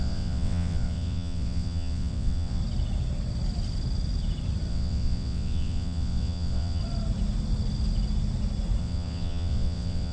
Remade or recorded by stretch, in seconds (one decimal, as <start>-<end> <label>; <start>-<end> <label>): 0.0-2.6 remade; 2.6-4.7 recorded; 4.7-6.8 remade; 6.8-8.8 recorded; 8.8-10.1 remade